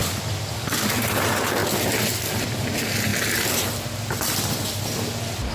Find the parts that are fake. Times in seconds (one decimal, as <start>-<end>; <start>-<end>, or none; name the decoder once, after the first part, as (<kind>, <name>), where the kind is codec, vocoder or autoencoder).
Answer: none